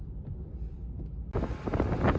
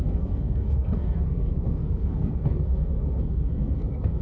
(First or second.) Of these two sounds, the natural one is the first